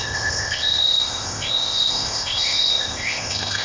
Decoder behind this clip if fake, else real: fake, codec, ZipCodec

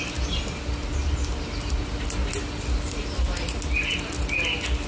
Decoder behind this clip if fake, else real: real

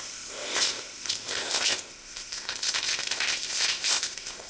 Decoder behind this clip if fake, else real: fake, codec, ZipCodec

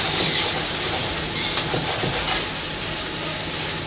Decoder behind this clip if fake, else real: real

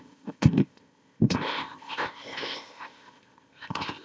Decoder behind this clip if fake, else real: fake, codec, ZipCodec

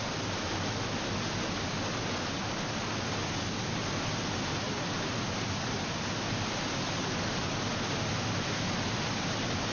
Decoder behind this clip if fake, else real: real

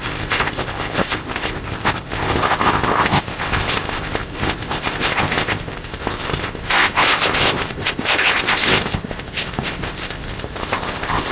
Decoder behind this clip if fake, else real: fake, codec, ZipCodec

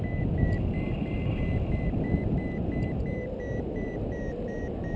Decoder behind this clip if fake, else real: real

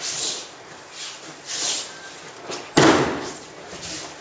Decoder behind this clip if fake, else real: real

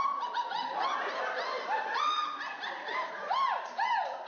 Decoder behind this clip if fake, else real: real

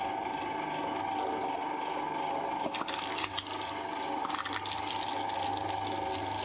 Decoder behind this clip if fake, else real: real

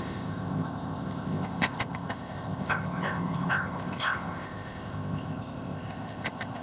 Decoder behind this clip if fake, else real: fake, codec, ZipCodec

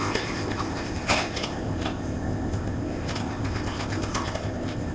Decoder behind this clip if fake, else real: fake, codec, ZipCodec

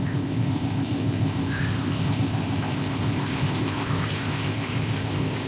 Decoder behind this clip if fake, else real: fake, codec, ZipCodec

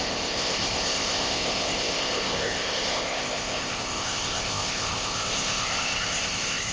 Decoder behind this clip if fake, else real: fake, codec, ZipCodec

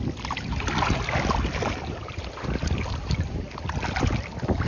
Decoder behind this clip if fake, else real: real